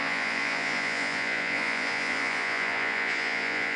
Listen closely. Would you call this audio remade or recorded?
remade